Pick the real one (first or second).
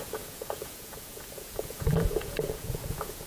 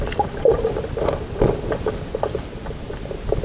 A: second